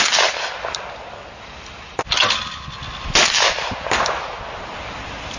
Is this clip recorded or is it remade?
recorded